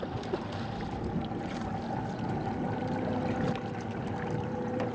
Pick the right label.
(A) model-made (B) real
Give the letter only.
B